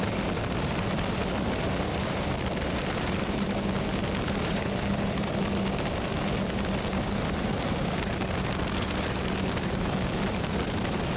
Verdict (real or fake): real